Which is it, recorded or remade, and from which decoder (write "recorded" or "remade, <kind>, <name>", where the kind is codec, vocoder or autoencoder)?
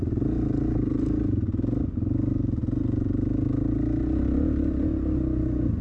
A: recorded